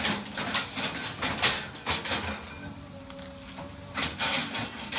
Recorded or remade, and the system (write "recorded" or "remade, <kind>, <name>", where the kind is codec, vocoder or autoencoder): recorded